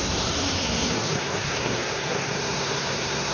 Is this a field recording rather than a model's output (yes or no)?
no